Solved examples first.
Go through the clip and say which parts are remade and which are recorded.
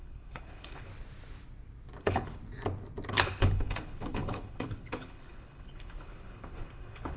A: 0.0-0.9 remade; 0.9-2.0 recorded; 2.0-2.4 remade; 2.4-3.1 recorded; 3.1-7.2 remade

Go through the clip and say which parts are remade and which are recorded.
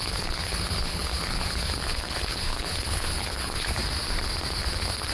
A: 0.0-3.8 remade; 3.8-5.1 recorded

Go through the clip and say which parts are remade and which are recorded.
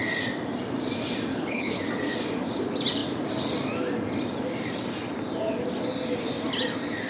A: 0.0-1.3 recorded; 1.3-1.8 remade; 1.8-7.1 recorded